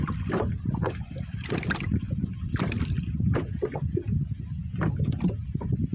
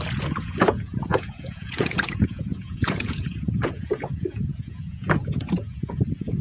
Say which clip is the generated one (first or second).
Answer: second